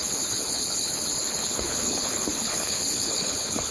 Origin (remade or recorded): remade